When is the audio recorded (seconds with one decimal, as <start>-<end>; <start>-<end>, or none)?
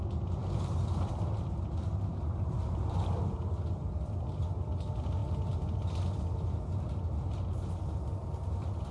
0.0-0.4; 4.3-8.9